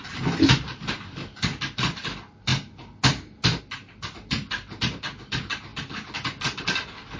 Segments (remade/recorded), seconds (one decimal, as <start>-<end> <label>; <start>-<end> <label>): 0.0-7.2 recorded